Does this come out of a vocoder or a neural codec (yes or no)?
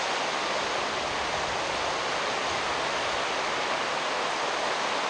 no